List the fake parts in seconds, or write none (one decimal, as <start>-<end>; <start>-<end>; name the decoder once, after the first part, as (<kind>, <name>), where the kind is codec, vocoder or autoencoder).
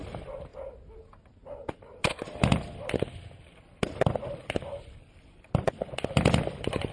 none